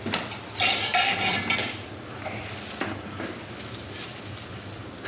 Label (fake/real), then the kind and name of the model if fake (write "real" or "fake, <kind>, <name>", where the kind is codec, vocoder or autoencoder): real